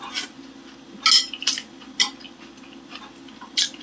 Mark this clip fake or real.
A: real